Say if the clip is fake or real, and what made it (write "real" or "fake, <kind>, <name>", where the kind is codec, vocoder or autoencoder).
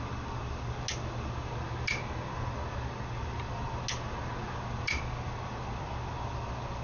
real